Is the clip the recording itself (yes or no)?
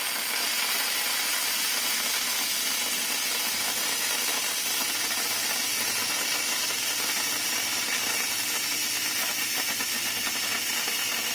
yes